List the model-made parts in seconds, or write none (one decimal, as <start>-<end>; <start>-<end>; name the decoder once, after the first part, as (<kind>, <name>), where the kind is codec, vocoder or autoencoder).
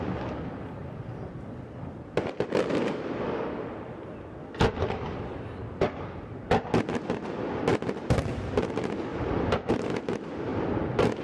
0.8-2.3 (vocoder, BigVGAN v2); 7.7-8.3; 9.1-9.7; 10.5-11.2